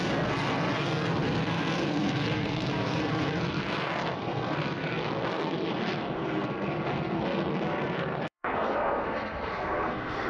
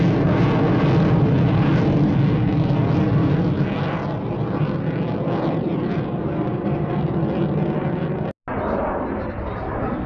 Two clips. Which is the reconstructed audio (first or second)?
first